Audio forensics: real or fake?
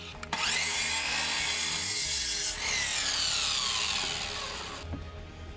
real